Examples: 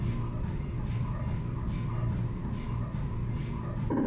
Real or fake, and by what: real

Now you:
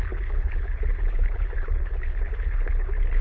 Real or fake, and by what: fake, codec, HILCodec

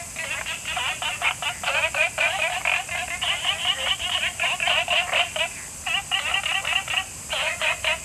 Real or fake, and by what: real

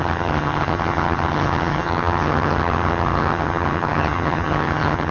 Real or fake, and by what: fake, vocoder, HiFi-GAN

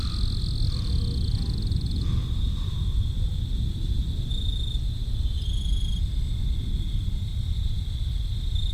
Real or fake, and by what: real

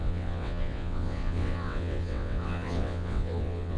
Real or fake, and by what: fake, vocoder, WaveNeXt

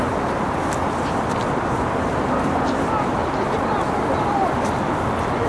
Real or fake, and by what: fake, vocoder, BigVGAN v2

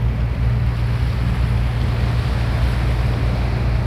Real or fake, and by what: real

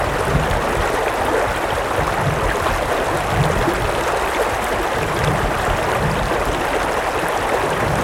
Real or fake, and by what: real